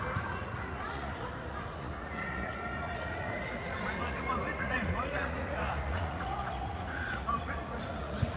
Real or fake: fake